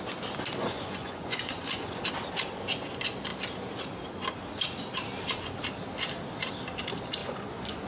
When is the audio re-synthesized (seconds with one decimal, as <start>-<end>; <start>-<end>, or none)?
0.6-2.0; 7.2-7.9